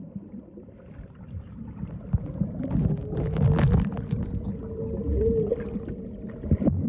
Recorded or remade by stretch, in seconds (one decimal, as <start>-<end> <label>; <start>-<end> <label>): 0.0-6.9 recorded